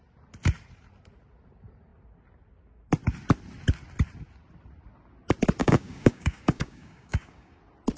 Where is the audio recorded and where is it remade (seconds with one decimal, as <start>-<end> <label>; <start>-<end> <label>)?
0.0-5.6 recorded; 5.6-7.6 remade; 7.6-8.0 recorded